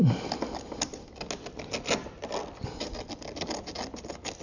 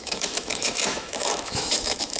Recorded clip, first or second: first